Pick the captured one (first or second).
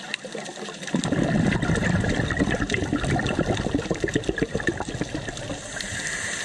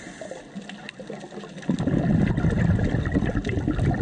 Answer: second